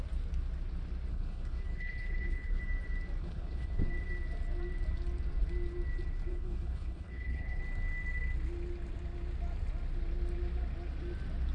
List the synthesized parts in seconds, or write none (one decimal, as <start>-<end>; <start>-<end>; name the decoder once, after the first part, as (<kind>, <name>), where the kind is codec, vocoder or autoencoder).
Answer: 1.1-2.6 (codec, HILCodec); 3.2-3.9; 6.3-7.6